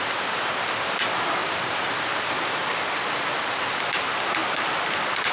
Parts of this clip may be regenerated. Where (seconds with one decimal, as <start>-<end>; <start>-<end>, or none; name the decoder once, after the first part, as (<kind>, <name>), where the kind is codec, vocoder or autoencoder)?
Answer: none